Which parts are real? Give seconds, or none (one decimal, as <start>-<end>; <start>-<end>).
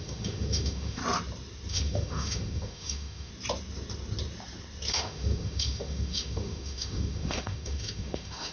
1.0-1.7; 3.3-4.9